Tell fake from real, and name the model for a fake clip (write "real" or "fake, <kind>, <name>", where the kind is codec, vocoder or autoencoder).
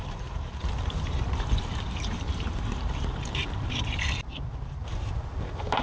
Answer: fake, vocoder, BigVGAN v2